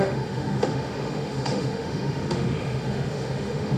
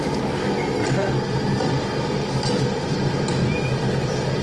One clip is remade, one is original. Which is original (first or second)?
second